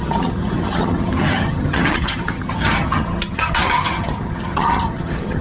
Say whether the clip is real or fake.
fake